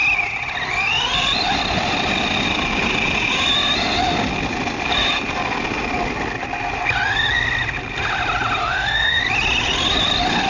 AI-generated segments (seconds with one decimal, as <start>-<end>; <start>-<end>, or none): 8.6-9.2